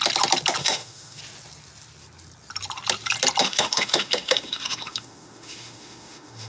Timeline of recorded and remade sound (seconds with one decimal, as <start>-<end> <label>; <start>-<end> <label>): 0.0-0.6 recorded; 0.6-1.2 remade; 1.2-3.4 recorded; 3.4-6.5 remade